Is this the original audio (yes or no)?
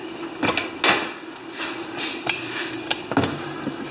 yes